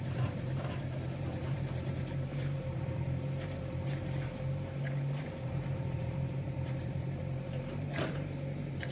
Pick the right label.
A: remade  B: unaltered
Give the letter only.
A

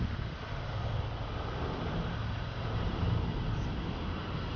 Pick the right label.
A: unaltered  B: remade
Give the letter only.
B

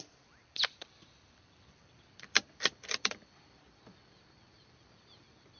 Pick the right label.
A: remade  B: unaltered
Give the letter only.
A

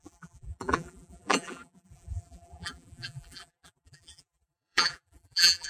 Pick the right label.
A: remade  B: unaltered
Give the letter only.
A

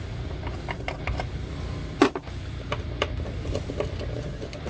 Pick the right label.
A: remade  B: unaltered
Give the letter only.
A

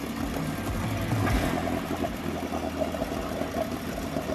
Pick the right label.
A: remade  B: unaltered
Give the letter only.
B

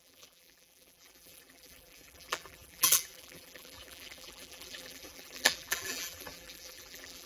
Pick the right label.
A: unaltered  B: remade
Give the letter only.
B